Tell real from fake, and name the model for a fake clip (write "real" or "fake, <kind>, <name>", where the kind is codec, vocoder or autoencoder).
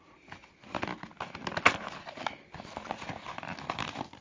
real